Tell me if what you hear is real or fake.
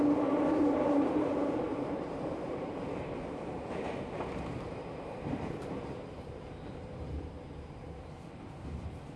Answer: fake